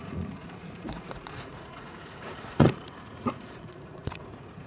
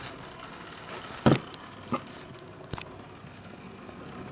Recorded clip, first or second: second